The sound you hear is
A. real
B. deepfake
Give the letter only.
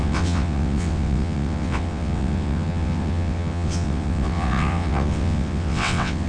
B